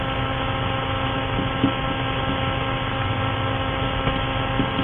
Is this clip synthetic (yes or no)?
no